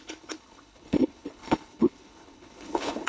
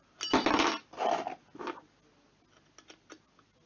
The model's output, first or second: first